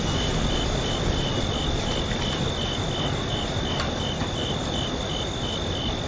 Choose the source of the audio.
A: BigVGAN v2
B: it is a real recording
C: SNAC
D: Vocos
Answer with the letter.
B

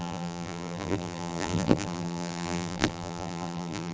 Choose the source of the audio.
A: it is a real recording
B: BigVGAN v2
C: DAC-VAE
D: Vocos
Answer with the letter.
B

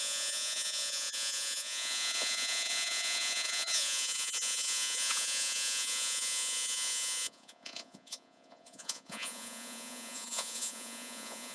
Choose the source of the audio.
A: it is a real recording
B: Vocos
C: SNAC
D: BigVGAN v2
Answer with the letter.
B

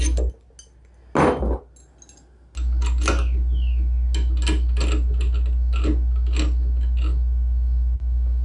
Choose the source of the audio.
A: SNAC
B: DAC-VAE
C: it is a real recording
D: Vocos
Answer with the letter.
C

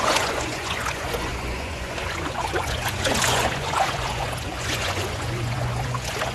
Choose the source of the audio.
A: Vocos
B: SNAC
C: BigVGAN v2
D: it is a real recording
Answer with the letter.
A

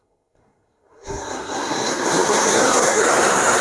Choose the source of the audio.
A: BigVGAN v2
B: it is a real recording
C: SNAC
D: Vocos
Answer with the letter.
C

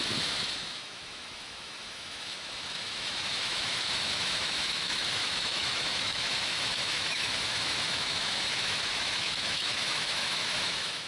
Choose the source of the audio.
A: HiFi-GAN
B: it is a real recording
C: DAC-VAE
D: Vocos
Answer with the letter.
C